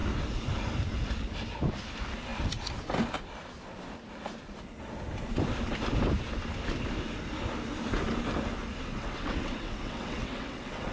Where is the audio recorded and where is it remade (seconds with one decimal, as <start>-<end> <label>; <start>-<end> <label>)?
0.0-8.9 recorded; 8.9-10.9 remade